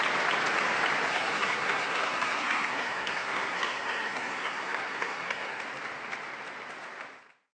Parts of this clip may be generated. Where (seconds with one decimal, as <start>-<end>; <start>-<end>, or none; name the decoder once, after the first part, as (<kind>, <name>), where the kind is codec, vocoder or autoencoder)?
1.1-5.6 (codec, SNAC)